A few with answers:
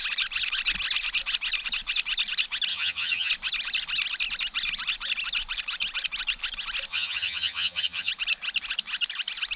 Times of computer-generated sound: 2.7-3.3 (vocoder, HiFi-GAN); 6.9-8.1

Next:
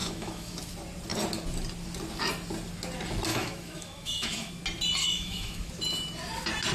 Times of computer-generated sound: 0.0-0.6 (autoencoder, DAC-VAE); 3.3-4.5; 5.0-5.7

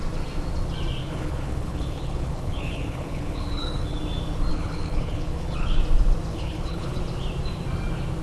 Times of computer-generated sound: 1.0-4.0 (codec, HILCodec); 4.5-5.8; 6.3-7.0

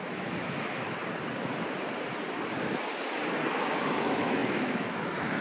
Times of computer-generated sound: 0.0-1.0 (autoencoder, DAC-VAE); 3.5-5.4

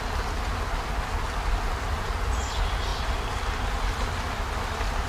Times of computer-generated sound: 2.9-5.1 (vocoder, BigVGAN v2)

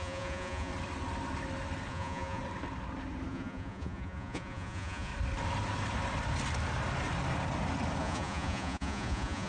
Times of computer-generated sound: 0.0-0.7 (vocoder, Vocos); 1.9-2.4; 3.3-5.1; 8.0-9.5